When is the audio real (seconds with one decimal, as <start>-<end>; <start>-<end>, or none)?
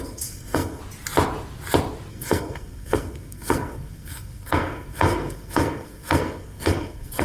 0.8-2.1